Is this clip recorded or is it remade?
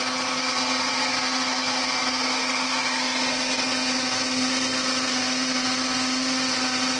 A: recorded